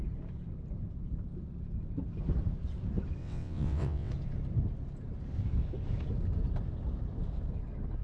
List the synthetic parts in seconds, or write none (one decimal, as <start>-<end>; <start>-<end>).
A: 3.2-4.1